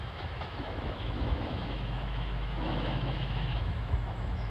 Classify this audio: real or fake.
fake